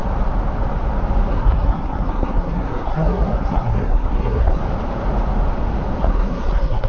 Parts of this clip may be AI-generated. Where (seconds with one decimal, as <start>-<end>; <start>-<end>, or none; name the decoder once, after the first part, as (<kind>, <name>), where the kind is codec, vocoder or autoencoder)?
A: 1.3-4.6 (codec, SNAC); 6.0-6.9